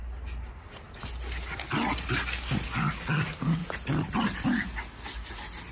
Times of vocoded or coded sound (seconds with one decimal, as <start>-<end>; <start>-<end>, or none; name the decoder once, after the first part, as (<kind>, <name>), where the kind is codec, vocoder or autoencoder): none